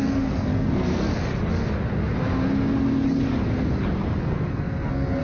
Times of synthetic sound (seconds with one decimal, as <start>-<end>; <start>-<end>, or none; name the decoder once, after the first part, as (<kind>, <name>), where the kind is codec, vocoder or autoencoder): 0.0-1.1 (codec, SNAC); 4.2-5.2